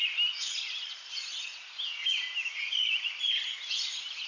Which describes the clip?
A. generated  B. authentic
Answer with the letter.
B